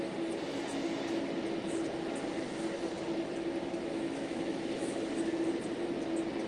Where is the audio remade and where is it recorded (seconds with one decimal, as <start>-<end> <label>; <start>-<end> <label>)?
0.0-3.9 recorded; 3.9-5.0 remade; 5.0-6.5 recorded